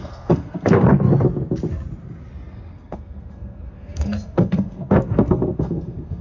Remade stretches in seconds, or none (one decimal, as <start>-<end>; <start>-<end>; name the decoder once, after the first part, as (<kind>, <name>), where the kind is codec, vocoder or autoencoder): 0.0-0.9 (codec, SNAC); 2.7-6.2